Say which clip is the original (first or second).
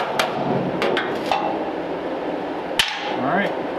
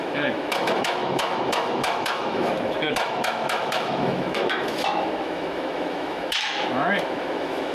first